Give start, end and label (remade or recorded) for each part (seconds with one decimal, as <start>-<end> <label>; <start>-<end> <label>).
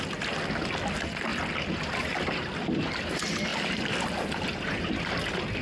0.0-3.5 recorded; 3.5-5.0 remade; 5.0-5.6 recorded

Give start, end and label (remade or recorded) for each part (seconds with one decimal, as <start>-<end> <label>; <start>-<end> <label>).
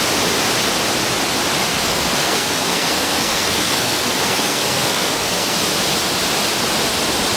0.0-1.7 recorded; 1.7-5.6 remade; 5.6-7.4 recorded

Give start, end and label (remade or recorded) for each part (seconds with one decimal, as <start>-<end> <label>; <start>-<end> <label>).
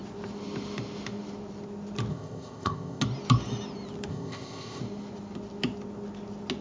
0.0-2.1 recorded; 2.1-3.0 remade; 3.0-4.1 recorded; 4.1-4.8 remade; 4.8-6.6 recorded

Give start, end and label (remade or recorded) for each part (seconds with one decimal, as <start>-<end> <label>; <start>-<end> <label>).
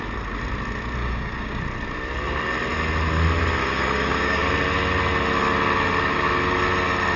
0.0-1.0 recorded; 1.0-1.6 remade; 1.6-3.6 recorded; 3.6-4.4 remade; 4.4-7.2 recorded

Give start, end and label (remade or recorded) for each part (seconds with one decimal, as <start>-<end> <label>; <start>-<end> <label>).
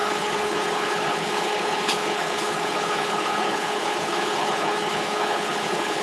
0.0-6.0 remade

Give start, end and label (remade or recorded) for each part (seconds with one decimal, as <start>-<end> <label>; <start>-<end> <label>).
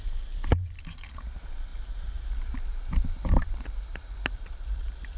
0.0-5.2 remade